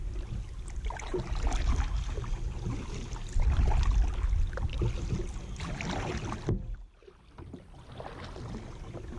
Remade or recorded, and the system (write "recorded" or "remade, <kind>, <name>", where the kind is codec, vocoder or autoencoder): recorded